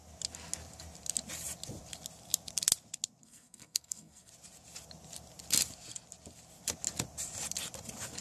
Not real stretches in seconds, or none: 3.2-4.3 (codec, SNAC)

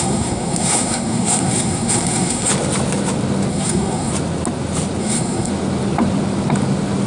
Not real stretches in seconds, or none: 0.0-2.5 (codec, SNAC); 3.5-4.1; 5.0-5.5

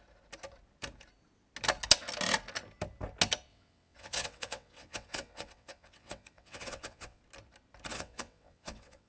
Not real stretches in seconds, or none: 3.5-7.2 (vocoder, WaveNeXt); 7.9-9.1

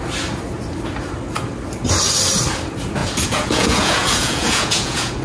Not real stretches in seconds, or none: 3.0-5.2 (vocoder, Vocos)

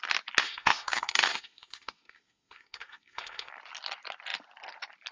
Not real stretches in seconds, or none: 0.4-3.5 (codec, SNAC)

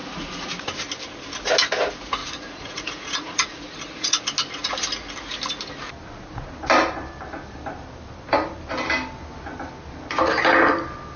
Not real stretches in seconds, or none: 0.0-0.5 (vocoder, Vocos); 2.2-4.2

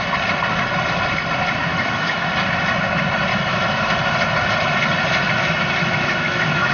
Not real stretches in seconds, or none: 1.7-2.3 (autoencoder, DAC-VAE); 3.3-3.8; 5.8-6.7